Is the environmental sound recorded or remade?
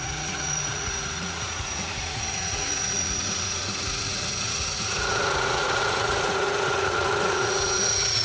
remade